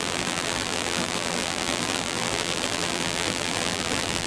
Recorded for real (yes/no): no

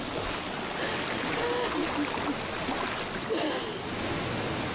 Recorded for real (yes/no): yes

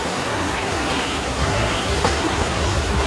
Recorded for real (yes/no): no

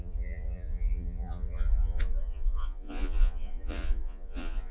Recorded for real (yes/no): no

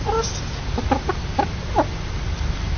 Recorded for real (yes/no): yes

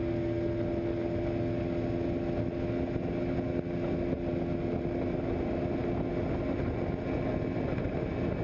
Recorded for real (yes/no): yes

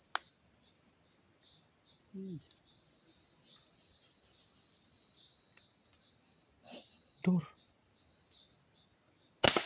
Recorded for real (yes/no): yes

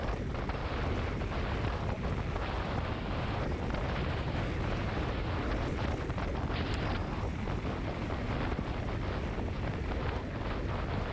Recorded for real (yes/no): yes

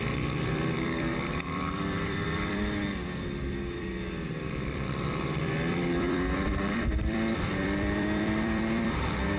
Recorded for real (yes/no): no